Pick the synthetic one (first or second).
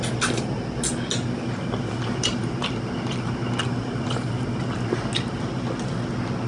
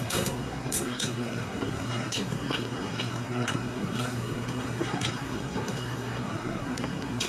second